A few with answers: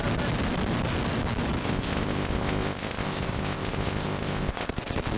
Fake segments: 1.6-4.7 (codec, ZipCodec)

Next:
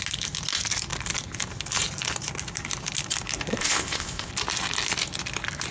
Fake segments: 3.6-4.3 (codec, ZipCodec)

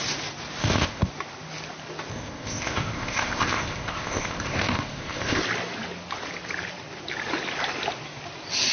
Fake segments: 0.6-1.1 (codec, ZipCodec); 2.1-5.4